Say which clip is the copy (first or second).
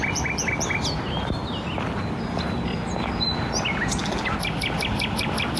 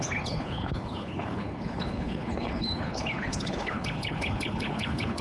second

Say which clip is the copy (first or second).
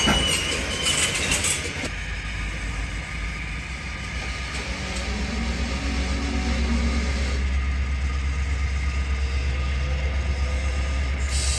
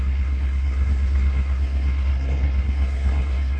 second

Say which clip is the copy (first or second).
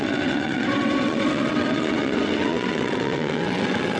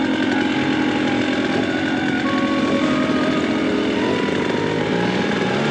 first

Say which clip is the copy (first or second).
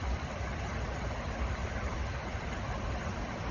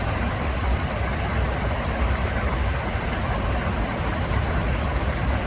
first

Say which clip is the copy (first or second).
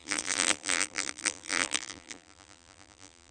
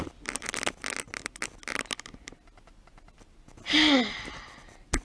first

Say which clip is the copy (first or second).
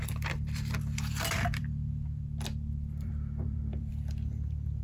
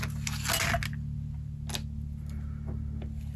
first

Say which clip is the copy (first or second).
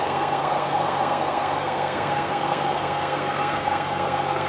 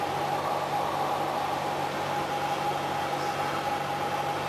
first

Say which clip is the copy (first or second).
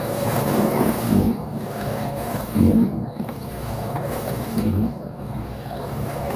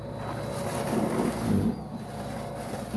first